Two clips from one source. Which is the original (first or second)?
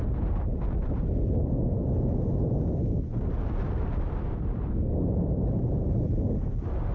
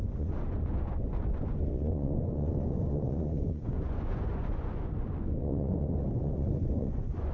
first